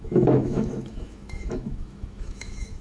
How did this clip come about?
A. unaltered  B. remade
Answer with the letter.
B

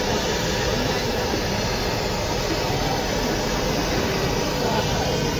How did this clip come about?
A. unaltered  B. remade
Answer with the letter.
A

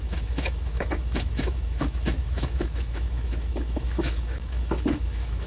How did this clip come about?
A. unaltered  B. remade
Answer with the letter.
B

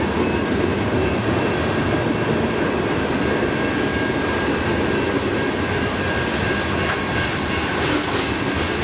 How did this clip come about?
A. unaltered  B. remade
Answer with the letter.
A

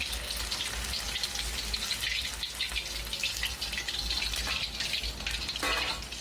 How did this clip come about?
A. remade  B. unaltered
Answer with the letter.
B